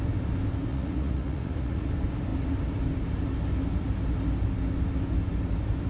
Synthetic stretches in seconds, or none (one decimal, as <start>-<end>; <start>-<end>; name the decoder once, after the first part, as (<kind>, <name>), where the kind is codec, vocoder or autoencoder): 0.7-1.9 (vocoder, Vocos)

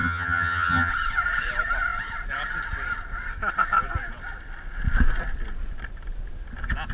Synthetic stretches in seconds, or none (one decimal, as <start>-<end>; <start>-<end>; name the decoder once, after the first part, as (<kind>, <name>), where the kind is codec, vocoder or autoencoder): 0.0-0.9 (vocoder, HiFi-GAN)